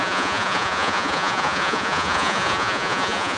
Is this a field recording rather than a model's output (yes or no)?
no